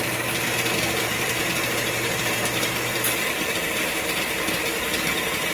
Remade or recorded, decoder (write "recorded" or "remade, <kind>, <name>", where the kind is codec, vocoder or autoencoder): remade, vocoder, BigVGAN v2